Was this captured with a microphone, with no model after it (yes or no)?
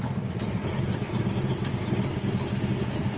no